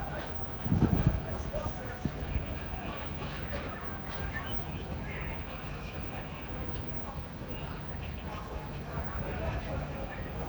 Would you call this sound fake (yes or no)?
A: yes